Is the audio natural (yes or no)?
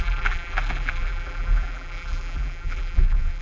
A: no